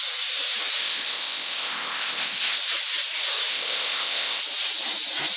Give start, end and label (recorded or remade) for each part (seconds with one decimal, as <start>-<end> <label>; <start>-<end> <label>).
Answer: 0.0-0.8 recorded; 0.8-2.6 remade; 2.6-3.5 recorded; 3.5-4.4 remade; 4.4-5.4 recorded